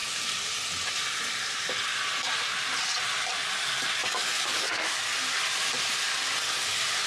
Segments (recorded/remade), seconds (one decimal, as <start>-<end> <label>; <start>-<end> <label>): 0.0-4.0 recorded; 4.0-5.0 remade; 5.0-7.1 recorded